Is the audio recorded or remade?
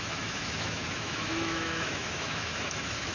remade